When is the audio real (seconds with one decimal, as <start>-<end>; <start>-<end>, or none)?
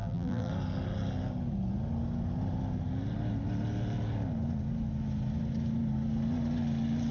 0.5-7.1